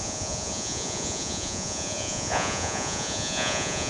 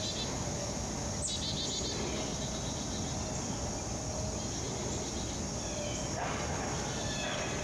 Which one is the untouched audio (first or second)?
second